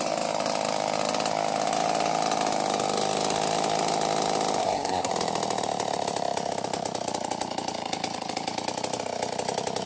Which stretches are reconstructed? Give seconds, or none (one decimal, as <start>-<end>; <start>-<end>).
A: 4.6-5.1